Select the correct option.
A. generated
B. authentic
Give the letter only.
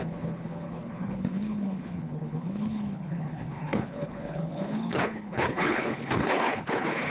A